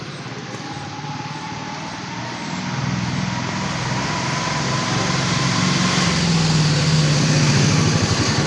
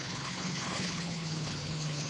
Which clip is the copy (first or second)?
second